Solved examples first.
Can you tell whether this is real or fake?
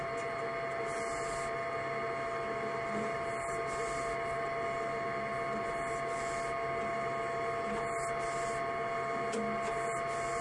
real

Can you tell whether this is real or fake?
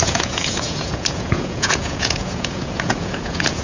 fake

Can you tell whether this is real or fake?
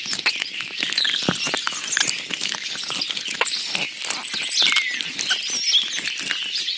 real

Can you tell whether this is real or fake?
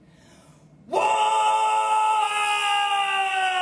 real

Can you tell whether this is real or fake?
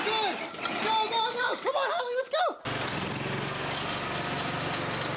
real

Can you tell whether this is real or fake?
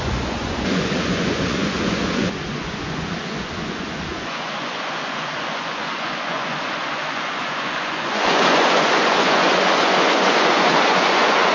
fake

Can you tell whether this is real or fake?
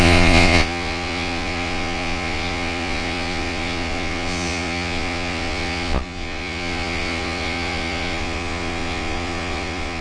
fake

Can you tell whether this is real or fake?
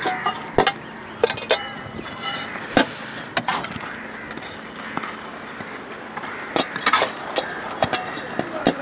real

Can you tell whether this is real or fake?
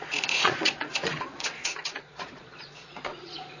fake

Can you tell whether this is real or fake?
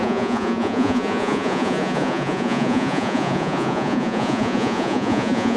fake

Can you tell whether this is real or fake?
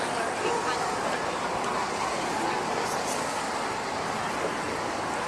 real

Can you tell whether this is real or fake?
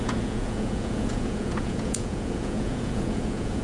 fake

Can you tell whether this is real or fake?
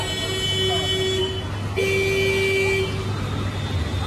real